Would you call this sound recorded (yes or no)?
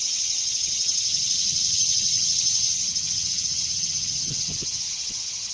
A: no